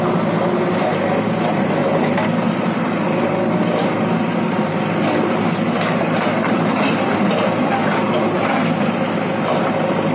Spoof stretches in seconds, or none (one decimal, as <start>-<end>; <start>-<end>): none